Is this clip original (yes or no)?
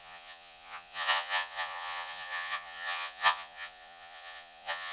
no